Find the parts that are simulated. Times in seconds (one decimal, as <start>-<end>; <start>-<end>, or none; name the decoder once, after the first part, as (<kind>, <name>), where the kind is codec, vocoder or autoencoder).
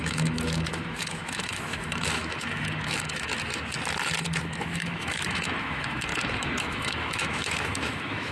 0.0-3.3 (autoencoder, DAC-VAE); 4.2-6.1; 6.6-8.3